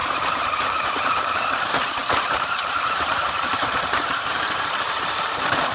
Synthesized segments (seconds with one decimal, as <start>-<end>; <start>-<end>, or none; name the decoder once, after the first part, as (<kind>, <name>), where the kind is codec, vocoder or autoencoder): 0.0-5.7 (vocoder, BigVGAN v2)